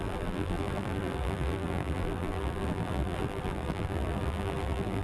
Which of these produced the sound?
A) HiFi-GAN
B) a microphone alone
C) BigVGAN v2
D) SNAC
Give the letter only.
C